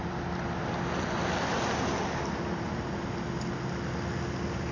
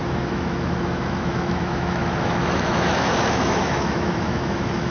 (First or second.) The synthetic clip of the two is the second